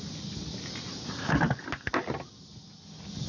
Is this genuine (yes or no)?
yes